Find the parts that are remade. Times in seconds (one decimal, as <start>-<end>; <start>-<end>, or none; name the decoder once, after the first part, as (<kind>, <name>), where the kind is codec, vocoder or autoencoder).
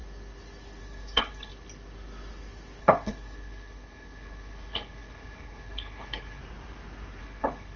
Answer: 0.8-1.5 (codec, HILCodec); 2.8-6.4; 7.2-7.8